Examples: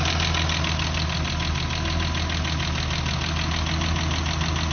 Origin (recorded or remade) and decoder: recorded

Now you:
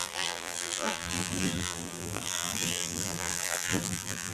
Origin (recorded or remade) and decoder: remade, vocoder, BigVGAN v2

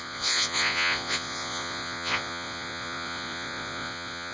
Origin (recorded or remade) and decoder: remade, vocoder, Vocos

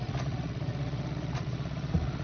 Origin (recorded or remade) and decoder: remade, vocoder, Vocos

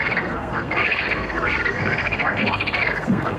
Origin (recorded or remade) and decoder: remade, codec, SNAC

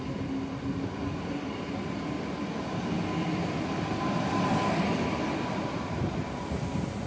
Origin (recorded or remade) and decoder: recorded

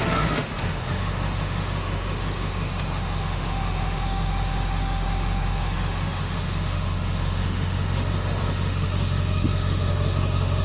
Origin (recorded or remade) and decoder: remade, autoencoder, DAC-VAE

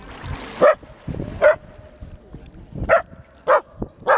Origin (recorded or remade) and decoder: recorded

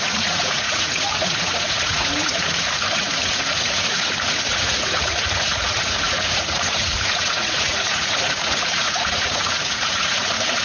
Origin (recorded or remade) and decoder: remade, vocoder, Vocos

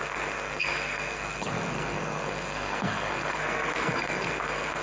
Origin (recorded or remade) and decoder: remade, codec, SNAC